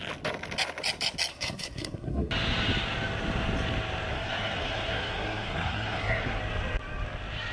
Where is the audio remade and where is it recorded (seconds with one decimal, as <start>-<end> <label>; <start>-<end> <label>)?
0.0-1.3 recorded; 1.3-2.3 remade; 2.3-4.1 recorded; 4.1-6.4 remade; 6.4-7.5 recorded